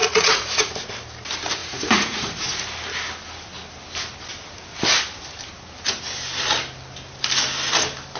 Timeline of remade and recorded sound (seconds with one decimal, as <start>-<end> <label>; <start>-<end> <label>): 0.0-0.7 remade; 0.7-1.6 recorded; 1.6-2.4 remade; 2.4-8.2 recorded